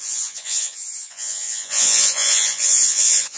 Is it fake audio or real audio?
fake